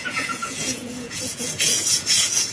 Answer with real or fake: fake